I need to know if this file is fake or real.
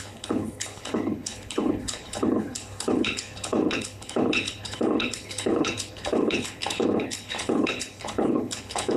fake